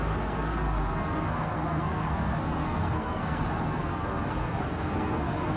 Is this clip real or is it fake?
fake